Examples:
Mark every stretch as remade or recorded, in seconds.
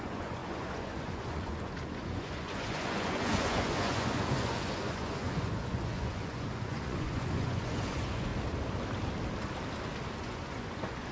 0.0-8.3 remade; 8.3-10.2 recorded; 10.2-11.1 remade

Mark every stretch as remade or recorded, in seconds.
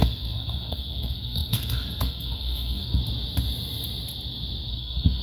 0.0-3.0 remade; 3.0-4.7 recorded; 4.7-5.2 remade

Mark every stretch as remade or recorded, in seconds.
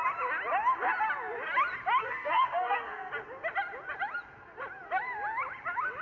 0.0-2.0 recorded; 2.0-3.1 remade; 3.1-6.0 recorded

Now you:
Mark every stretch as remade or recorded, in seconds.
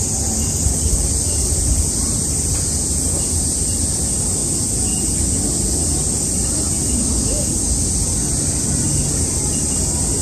0.0-10.2 recorded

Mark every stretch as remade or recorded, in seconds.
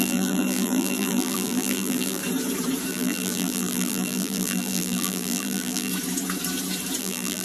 0.0-2.2 remade; 2.2-2.9 recorded; 2.9-5.9 remade; 5.9-7.0 recorded; 7.0-7.4 remade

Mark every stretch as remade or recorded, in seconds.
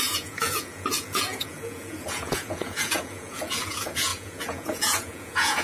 0.0-5.6 remade